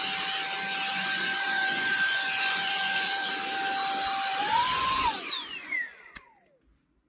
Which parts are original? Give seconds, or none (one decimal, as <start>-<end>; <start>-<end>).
0.0-0.9; 3.3-4.3; 6.4-7.1